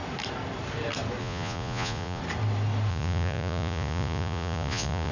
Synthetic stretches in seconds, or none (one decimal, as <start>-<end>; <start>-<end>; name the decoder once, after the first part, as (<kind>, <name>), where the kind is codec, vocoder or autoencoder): 1.2-2.2 (vocoder, Vocos); 2.9-5.1